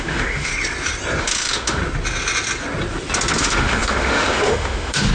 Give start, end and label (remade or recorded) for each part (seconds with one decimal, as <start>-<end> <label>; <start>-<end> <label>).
0.0-0.5 remade; 0.5-1.2 recorded; 1.2-1.8 remade; 1.8-3.4 recorded; 3.4-5.1 remade